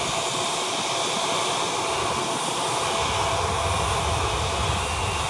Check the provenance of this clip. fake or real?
real